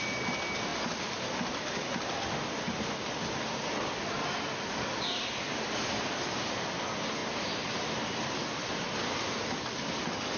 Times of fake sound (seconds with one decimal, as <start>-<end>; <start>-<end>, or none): none